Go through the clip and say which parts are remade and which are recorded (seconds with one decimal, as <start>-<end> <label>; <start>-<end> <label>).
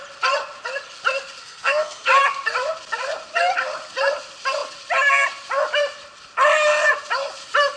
0.0-1.4 recorded; 1.4-2.1 remade; 2.1-7.8 recorded